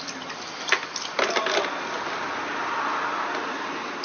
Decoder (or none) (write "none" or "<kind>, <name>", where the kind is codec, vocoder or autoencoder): none